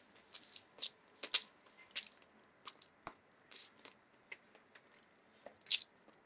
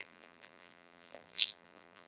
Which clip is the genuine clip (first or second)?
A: first